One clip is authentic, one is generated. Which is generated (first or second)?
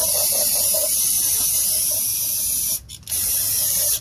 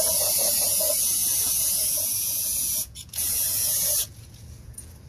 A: second